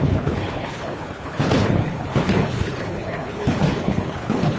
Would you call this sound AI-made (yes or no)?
yes